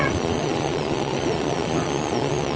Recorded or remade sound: remade